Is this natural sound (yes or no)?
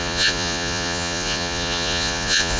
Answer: no